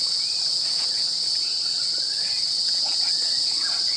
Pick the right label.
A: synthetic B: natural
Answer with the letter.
A